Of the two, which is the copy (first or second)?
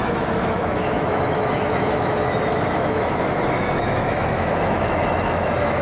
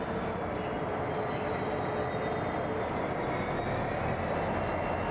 first